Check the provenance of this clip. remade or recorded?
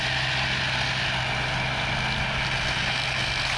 recorded